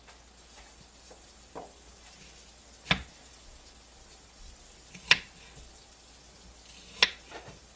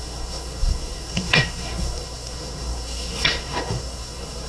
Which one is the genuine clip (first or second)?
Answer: first